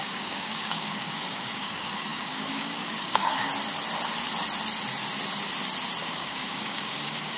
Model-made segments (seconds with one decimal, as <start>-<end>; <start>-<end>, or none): 0.0-3.5; 6.0-7.4